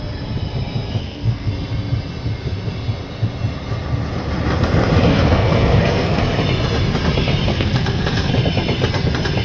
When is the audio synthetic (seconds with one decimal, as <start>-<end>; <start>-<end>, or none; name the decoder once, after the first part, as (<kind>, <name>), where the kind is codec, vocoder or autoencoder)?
1.0-1.5 (codec, SNAC); 5.1-6.2; 7.5-8.3